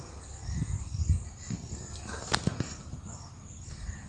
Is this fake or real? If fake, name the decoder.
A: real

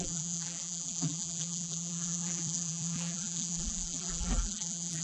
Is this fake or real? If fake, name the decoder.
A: fake, vocoder, BigVGAN v2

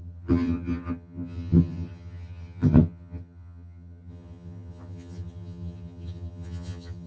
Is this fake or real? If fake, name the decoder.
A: fake, vocoder, HiFi-GAN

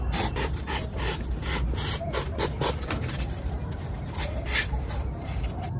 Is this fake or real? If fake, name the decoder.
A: real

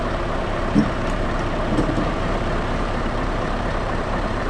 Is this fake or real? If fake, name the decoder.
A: fake, vocoder, BigVGAN v2